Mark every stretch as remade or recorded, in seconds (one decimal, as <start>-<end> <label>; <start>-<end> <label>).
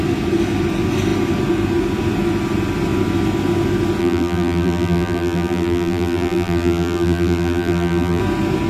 0.0-4.0 recorded; 4.0-8.2 remade; 8.2-8.7 recorded